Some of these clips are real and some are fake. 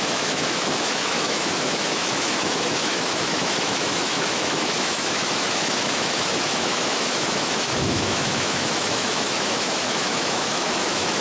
fake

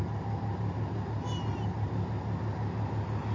real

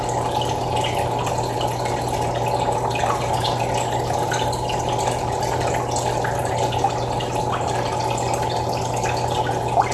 real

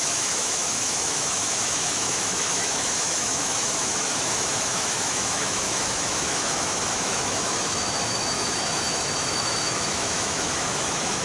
fake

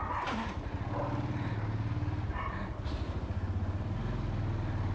real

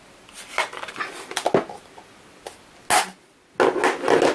real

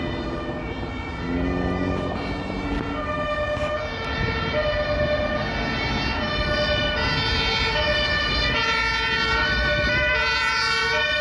real